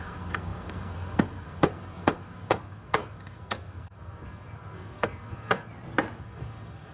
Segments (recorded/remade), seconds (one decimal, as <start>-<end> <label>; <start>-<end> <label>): 0.0-5.7 remade; 5.7-6.2 recorded; 6.2-6.9 remade